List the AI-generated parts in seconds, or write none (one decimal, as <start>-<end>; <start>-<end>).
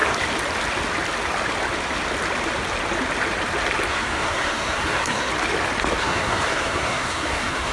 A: 3.9-5.3; 6.0-7.7